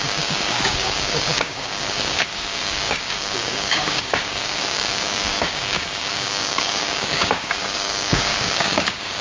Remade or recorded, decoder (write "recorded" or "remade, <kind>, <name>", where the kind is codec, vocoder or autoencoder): remade, codec, DAC